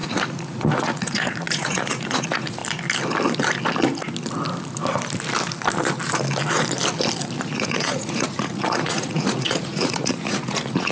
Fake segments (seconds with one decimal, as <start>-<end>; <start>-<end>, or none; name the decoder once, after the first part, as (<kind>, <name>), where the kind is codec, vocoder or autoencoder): 0.0-2.6 (vocoder, Vocos); 7.4-10.9